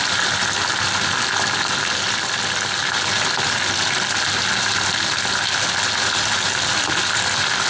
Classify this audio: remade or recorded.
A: recorded